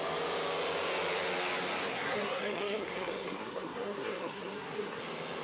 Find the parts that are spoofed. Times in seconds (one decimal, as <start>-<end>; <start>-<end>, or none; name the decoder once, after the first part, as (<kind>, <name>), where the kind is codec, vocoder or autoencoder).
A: 1.9-5.0 (codec, SNAC)